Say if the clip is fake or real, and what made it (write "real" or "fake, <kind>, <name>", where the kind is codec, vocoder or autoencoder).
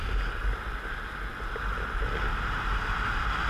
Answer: real